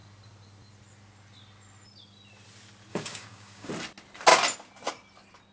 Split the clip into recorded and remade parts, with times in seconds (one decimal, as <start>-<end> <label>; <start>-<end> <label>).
0.0-2.9 recorded; 2.9-3.7 remade; 3.7-5.5 recorded